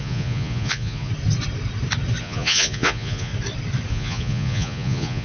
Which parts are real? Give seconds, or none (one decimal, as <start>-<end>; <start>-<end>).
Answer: 1.1-2.2; 3.3-3.9